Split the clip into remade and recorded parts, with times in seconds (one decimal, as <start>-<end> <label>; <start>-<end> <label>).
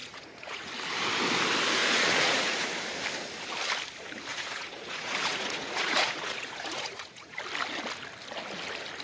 0.0-0.7 remade; 0.7-1.8 recorded; 1.8-2.8 remade; 2.8-4.3 recorded; 4.3-7.4 remade; 7.4-9.0 recorded